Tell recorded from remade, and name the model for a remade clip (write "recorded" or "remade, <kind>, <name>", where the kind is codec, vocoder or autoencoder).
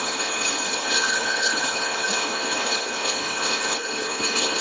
remade, codec, HILCodec